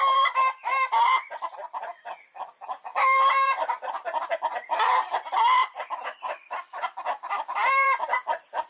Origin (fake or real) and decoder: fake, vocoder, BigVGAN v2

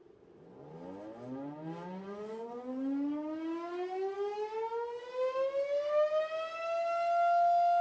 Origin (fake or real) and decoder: real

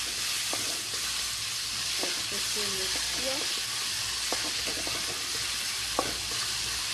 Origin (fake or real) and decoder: real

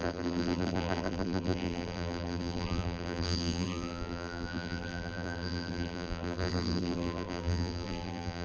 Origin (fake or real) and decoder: fake, vocoder, BigVGAN v2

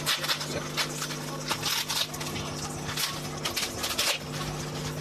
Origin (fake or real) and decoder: real